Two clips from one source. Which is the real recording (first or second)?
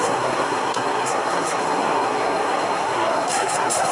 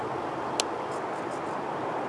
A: second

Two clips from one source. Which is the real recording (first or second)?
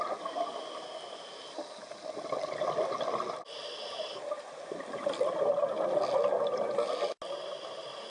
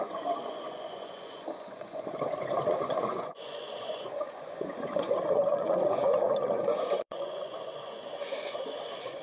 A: first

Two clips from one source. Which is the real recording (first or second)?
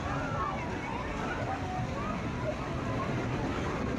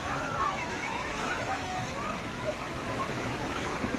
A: first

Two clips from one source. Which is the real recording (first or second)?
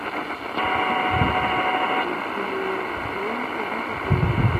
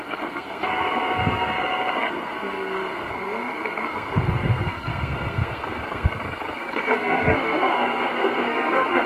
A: first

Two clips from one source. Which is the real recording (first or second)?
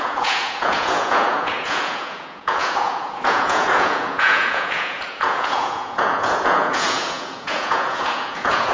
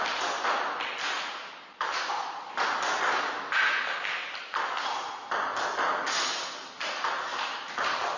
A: second